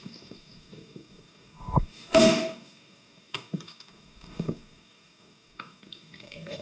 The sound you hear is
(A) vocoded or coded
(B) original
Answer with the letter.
A